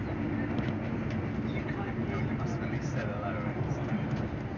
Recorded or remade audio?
recorded